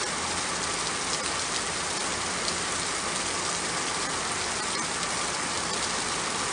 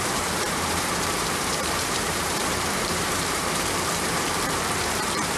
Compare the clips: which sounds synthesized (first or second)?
second